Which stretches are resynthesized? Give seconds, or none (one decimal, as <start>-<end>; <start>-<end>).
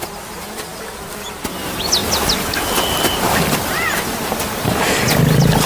0.7-1.4